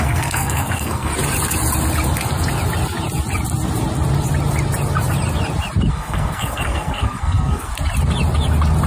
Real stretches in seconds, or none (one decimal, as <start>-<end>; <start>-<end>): 1.1-5.9; 7.7-8.9